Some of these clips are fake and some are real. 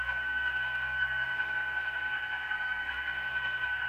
fake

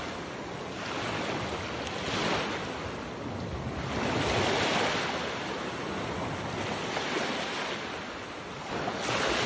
real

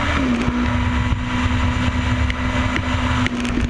real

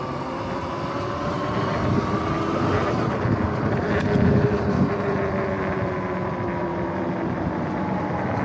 real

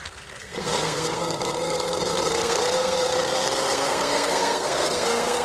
fake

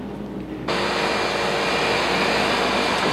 real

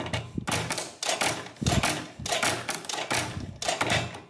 real